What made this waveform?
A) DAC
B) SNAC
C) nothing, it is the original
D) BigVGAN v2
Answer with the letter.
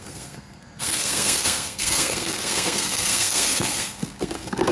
B